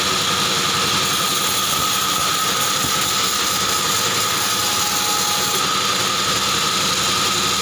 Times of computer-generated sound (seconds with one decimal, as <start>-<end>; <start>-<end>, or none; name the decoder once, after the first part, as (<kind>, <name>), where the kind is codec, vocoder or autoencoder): none